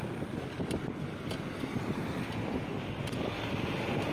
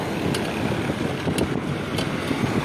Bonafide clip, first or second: second